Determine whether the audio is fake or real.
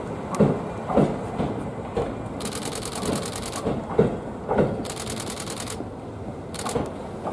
real